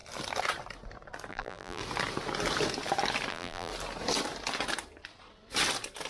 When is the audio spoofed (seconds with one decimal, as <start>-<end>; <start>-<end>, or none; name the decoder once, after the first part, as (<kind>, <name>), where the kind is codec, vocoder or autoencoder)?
1.3-1.8 (vocoder, BigVGAN v2); 3.3-3.7